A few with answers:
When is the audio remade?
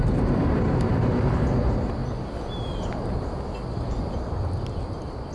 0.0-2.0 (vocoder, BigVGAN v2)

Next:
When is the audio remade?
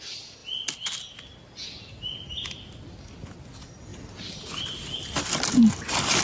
none